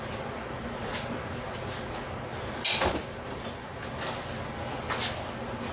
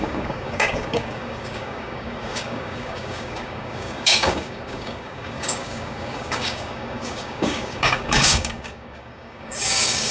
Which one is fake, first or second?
second